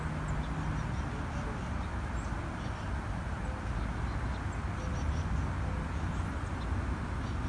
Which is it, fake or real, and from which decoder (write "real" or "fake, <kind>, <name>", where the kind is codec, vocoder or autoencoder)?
real